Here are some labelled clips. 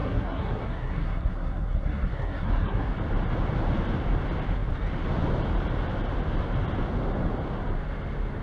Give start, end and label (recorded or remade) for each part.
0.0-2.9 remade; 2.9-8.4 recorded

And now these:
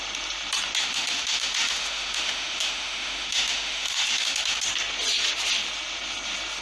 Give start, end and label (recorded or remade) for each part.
0.0-0.8 recorded; 0.8-4.6 remade; 4.6-6.6 recorded

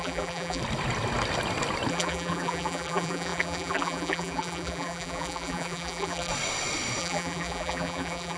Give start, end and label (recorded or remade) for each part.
0.0-0.6 remade; 0.6-1.9 recorded; 1.9-6.3 remade; 6.3-7.0 recorded; 7.0-8.4 remade